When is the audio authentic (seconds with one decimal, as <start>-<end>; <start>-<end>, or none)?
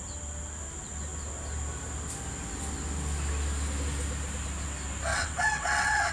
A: 0.0-5.1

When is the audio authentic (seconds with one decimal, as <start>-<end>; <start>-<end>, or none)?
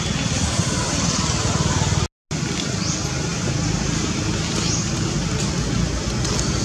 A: 0.0-6.6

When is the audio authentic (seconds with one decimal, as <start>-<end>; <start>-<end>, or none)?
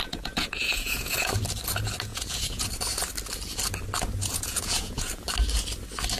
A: 1.3-2.1; 2.7-4.2; 5.3-6.2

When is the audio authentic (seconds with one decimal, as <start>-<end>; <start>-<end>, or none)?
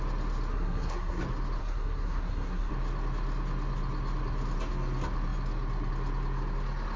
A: 0.0-0.5; 1.2-1.6; 2.7-7.0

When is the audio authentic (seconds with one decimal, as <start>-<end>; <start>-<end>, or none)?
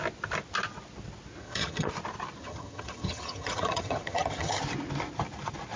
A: 0.0-1.4; 1.9-2.4; 4.6-5.8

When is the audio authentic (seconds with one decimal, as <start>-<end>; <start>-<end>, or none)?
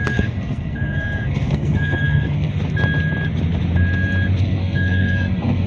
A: 2.5-4.4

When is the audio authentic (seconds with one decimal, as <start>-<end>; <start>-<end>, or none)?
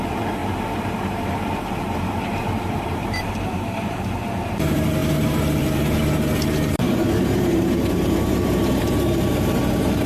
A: none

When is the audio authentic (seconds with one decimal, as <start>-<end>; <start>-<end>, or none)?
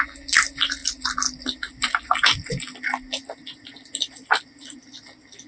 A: 0.0-5.5